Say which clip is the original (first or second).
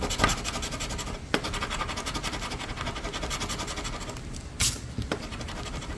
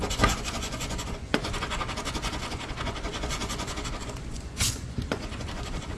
first